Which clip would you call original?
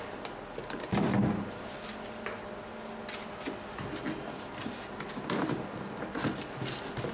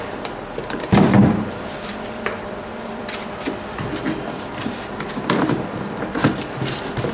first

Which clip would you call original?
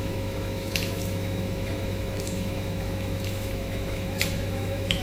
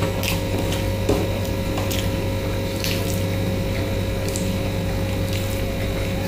second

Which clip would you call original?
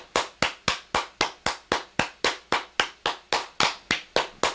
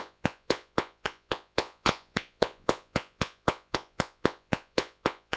first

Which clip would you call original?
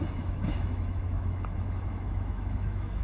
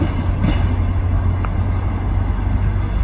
second